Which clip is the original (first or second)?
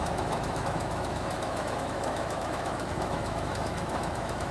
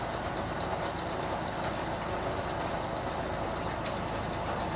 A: second